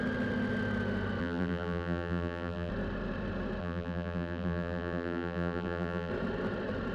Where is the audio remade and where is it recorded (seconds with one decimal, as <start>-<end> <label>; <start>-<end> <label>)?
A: 0.0-1.2 recorded; 1.2-2.7 remade; 2.7-3.6 recorded; 3.6-6.1 remade; 6.1-6.9 recorded